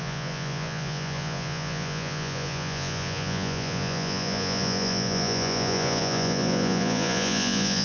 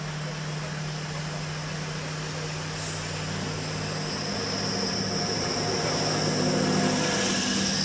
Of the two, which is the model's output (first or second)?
first